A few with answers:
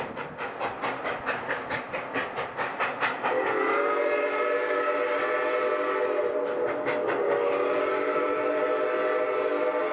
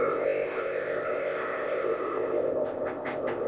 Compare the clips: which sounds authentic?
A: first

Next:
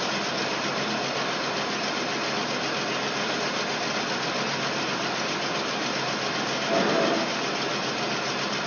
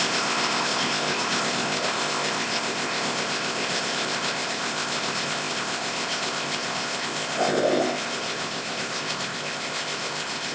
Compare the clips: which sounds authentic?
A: first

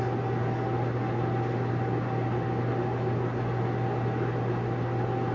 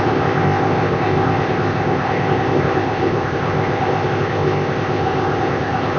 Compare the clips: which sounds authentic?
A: first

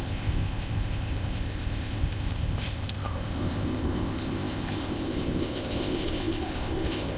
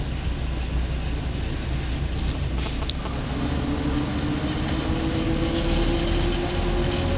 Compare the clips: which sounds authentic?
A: second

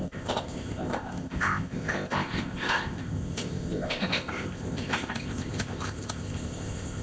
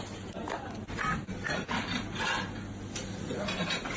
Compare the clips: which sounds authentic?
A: second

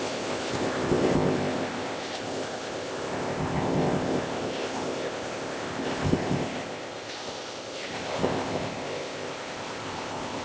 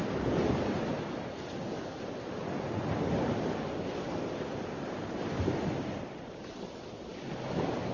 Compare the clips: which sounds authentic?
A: second